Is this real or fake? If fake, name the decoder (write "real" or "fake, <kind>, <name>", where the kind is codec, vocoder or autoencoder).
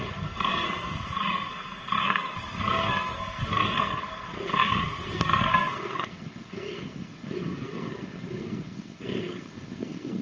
fake, codec, SNAC